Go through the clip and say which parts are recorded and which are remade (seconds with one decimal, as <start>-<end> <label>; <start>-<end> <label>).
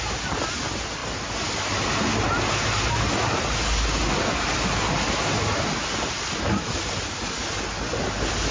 0.0-8.5 recorded